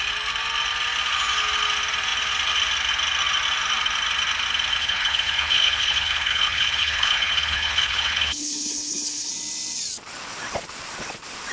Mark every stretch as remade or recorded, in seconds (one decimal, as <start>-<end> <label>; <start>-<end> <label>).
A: 0.0-4.8 recorded; 4.8-9.3 remade; 9.3-11.5 recorded